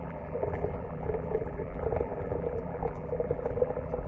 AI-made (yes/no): yes